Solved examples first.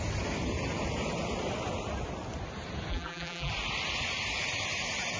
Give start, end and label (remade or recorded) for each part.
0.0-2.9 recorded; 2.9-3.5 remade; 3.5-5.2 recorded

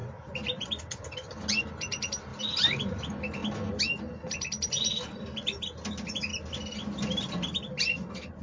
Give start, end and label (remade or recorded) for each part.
0.0-2.3 recorded; 2.3-3.0 remade; 3.0-8.4 recorded

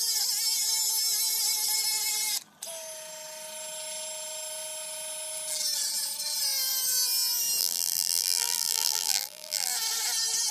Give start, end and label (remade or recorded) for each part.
0.0-7.6 recorded; 7.6-9.7 remade; 9.7-10.5 recorded